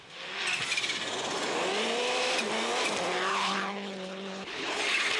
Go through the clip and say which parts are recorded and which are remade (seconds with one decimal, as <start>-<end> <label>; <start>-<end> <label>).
0.0-3.3 recorded; 3.3-4.8 remade; 4.8-5.2 recorded